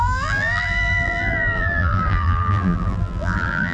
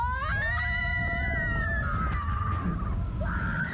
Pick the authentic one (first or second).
second